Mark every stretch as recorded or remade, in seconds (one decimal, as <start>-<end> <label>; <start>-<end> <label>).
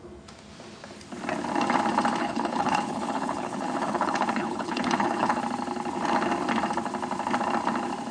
0.0-2.2 recorded; 2.2-5.4 remade; 5.4-8.1 recorded